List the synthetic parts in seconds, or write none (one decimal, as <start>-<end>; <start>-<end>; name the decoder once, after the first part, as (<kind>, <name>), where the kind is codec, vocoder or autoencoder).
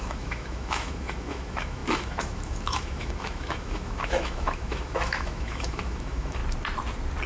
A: 0.0-6.4 (autoencoder, DAC-VAE)